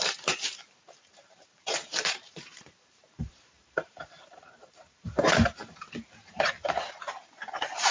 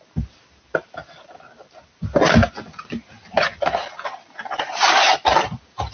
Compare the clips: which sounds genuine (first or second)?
second